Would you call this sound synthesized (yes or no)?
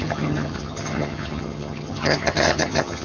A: yes